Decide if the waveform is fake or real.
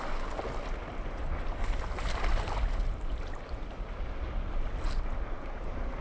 real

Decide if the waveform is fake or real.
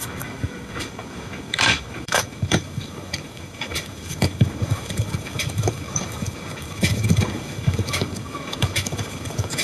fake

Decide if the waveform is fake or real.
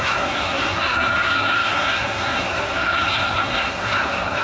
fake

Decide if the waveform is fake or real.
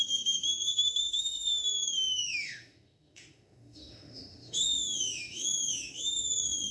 fake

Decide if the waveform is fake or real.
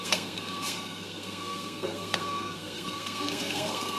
fake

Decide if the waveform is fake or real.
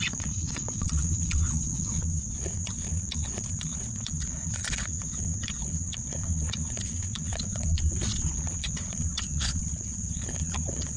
fake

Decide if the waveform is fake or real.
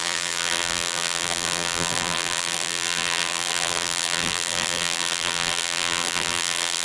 fake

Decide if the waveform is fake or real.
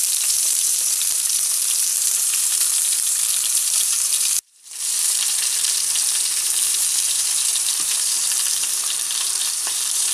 fake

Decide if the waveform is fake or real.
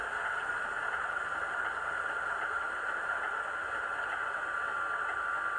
real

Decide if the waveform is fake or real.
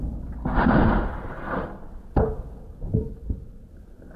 real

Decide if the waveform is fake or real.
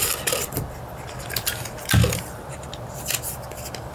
real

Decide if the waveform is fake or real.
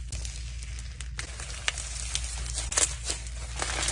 real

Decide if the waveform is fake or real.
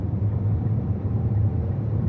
fake